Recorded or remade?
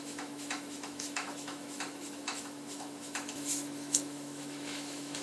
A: remade